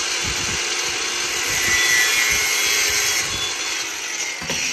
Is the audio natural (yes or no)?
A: yes